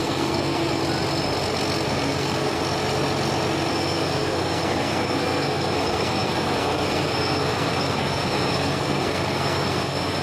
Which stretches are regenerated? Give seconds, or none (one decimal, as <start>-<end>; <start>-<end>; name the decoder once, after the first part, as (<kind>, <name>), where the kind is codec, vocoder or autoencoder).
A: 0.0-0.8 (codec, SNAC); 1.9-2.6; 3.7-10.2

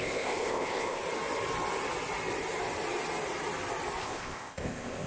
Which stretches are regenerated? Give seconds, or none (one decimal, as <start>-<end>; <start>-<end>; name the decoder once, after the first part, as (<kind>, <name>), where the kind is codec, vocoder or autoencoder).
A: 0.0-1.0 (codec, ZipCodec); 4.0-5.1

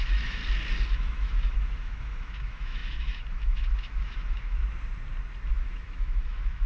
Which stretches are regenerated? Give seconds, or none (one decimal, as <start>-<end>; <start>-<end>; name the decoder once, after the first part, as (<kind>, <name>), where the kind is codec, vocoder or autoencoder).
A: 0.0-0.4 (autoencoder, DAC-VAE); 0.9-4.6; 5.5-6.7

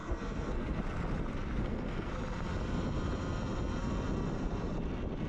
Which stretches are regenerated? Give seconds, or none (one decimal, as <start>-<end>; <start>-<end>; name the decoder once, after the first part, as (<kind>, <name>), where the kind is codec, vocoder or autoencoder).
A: 0.0-0.8 (codec, SNAC); 1.6-2.1

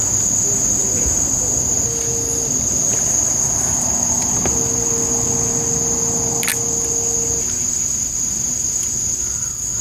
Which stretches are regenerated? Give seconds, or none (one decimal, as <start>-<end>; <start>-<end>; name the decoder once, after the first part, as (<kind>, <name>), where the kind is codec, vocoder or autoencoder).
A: none

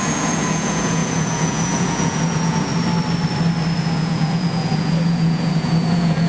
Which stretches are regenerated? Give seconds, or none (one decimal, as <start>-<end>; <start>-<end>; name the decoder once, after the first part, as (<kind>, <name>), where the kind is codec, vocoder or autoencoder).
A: 0.0-2.7 (vocoder, Vocos); 3.8-6.3

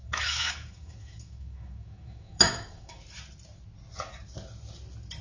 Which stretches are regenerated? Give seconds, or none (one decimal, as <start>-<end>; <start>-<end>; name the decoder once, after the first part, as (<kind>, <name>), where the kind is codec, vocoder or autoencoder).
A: 0.0-3.0 (autoencoder, DAC-VAE)